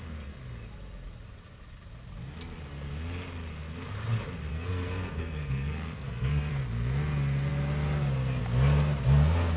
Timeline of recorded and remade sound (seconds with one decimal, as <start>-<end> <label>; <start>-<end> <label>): 0.0-4.5 recorded; 4.5-6.5 remade; 6.5-9.6 recorded